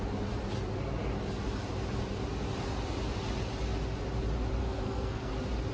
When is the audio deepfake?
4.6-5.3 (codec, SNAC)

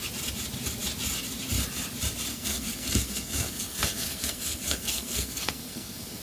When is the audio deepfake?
2.3-6.2 (codec, SNAC)

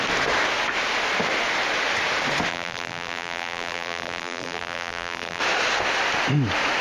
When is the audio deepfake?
2.5-5.4 (vocoder, BigVGAN v2)

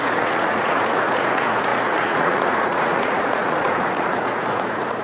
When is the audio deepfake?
0.0-5.0 (vocoder, Vocos)

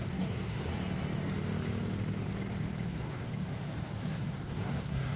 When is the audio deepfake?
0.0-0.7 (codec, SNAC); 2.9-3.3; 4.0-5.2